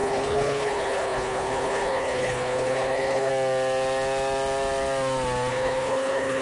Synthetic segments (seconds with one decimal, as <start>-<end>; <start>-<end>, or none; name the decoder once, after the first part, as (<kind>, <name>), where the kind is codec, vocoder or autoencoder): 0.0-3.3 (codec, HILCodec); 5.5-6.4